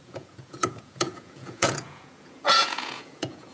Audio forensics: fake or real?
fake